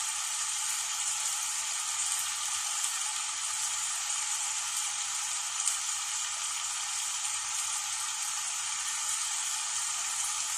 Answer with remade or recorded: recorded